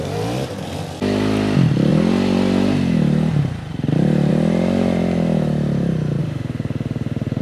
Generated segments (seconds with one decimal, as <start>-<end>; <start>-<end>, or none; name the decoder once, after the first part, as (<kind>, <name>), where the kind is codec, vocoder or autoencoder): 6.2-7.4 (autoencoder, DAC-VAE)